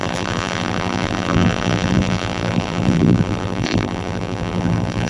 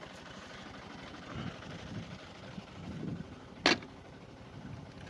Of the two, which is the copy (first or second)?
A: first